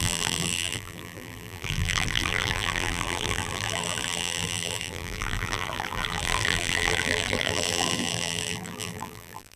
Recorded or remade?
remade